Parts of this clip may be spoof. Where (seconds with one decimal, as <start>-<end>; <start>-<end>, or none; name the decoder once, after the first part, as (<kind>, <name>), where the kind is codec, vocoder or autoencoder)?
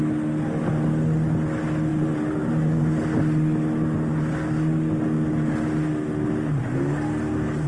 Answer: 1.9-2.8 (vocoder, BigVGAN v2)